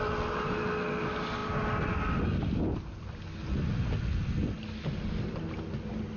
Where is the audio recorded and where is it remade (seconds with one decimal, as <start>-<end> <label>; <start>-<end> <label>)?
0.0-6.2 recorded